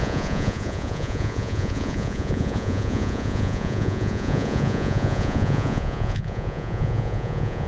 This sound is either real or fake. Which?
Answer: fake